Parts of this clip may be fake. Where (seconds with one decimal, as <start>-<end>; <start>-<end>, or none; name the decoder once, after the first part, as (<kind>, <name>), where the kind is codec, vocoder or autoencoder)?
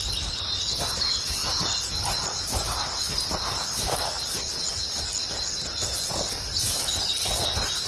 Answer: none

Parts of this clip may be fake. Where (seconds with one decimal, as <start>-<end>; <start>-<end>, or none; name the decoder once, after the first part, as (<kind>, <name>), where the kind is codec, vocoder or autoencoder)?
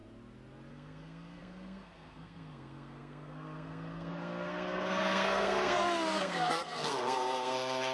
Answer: 0.7-7.9 (codec, SNAC)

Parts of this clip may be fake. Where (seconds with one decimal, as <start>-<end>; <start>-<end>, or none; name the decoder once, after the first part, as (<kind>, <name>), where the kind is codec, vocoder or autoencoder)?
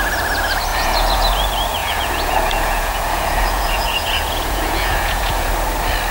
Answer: 0.7-1.3 (vocoder, Vocos); 1.8-5.5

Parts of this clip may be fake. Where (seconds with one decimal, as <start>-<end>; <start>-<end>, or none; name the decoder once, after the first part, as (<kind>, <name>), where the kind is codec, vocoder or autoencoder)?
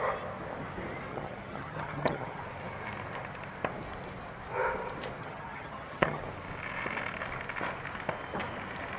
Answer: 1.1-2.4 (vocoder, HiFi-GAN); 5.2-6.2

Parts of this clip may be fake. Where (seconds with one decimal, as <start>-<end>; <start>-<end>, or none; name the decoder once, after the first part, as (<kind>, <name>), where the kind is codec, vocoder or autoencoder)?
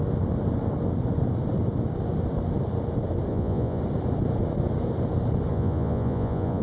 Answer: 3.3-3.8 (vocoder, Vocos); 5.5-6.6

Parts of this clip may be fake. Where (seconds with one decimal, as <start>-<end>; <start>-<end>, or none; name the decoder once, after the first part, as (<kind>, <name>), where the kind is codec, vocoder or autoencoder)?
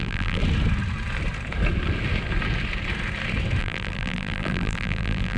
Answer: 0.0-0.4 (vocoder, BigVGAN v2); 3.6-5.4